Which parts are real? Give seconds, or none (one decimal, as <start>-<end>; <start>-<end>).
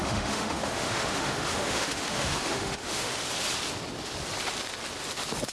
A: 3.1-5.5